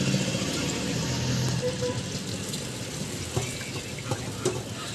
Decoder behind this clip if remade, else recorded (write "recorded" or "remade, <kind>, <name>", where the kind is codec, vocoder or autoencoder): recorded